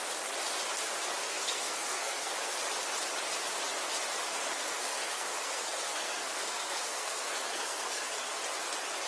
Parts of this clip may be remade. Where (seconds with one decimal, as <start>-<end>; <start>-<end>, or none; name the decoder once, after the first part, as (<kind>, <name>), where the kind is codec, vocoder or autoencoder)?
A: 1.2-2.6 (codec, SNAC); 4.3-8.4